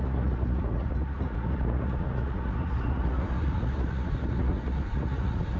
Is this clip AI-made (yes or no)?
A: yes